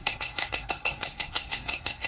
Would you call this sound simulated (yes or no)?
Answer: yes